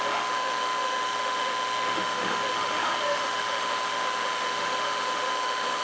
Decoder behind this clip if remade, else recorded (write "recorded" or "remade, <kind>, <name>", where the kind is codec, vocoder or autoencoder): remade, autoencoder, DAC-VAE